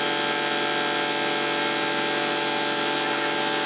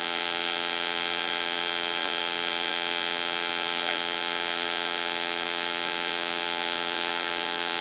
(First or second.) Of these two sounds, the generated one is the second